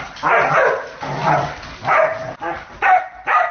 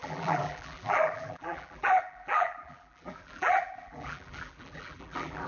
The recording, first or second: first